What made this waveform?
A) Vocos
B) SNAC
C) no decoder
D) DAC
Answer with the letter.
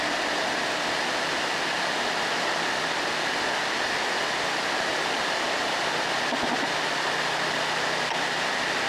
C